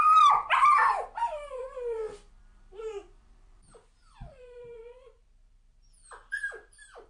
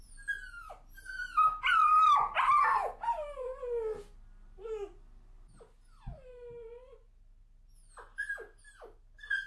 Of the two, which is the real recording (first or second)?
second